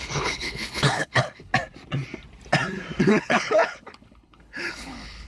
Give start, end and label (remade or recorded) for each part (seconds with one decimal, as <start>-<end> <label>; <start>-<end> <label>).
0.0-1.5 remade; 1.5-3.0 recorded; 3.0-5.3 remade